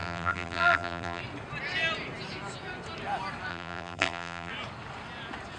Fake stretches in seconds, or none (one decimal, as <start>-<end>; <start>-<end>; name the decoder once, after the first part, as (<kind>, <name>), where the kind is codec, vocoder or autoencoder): 0.0-1.2 (vocoder, BigVGAN v2); 3.5-4.5